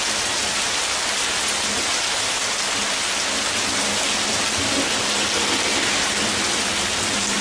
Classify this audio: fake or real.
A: real